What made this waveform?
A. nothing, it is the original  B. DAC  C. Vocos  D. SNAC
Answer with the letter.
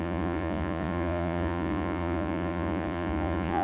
C